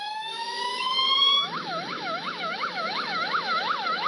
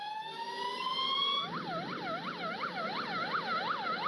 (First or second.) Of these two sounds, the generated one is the first